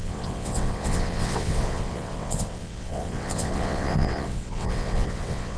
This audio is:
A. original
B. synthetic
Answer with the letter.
B